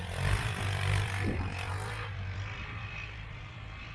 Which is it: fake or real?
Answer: fake